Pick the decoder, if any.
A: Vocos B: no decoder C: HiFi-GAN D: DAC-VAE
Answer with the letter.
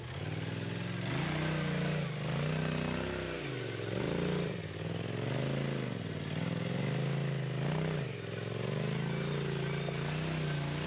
B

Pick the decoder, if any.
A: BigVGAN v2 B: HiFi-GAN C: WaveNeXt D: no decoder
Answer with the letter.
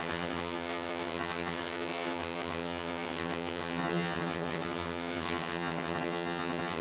B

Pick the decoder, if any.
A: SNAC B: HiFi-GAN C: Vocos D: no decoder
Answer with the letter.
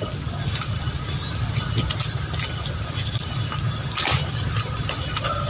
D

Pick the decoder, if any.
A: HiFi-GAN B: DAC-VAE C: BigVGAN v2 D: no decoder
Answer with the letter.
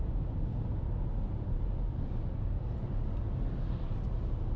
D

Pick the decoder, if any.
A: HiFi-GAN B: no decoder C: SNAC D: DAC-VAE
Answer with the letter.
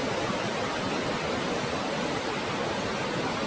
B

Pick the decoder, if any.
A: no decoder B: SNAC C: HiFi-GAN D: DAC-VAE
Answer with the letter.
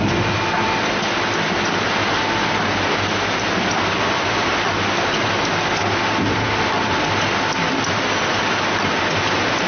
A